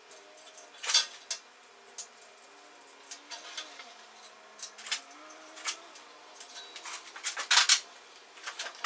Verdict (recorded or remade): recorded